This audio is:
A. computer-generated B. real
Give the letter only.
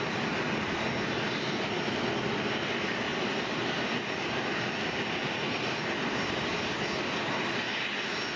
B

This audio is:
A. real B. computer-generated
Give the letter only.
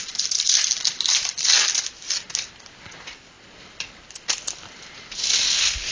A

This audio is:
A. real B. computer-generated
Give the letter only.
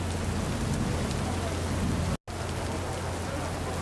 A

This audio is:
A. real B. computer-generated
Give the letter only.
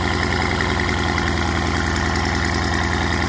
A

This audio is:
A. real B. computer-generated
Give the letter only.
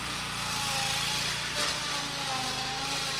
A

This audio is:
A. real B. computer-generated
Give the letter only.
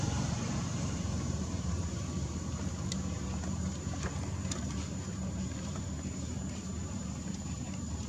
B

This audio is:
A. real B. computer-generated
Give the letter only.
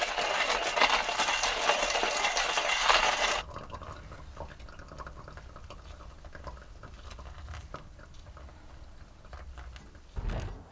A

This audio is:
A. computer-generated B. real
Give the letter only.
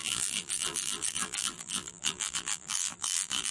A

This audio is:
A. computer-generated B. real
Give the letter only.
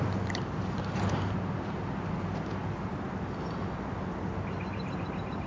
B